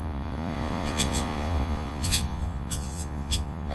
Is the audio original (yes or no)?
no